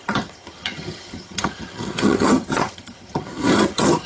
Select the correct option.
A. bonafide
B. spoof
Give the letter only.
B